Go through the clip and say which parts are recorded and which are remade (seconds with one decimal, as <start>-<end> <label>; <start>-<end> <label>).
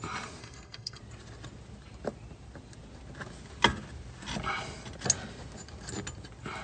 0.0-0.4 recorded; 0.4-1.0 remade; 1.0-6.6 recorded